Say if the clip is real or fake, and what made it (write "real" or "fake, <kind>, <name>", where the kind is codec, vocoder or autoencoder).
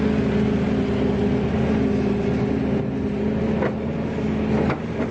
real